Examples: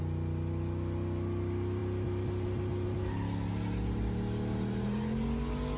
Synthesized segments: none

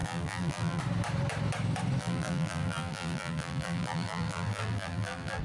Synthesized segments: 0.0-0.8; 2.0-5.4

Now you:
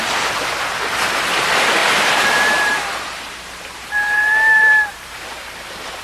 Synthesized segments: 1.8-5.3